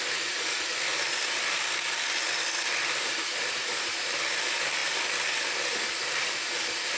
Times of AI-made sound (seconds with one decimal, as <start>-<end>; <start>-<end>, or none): none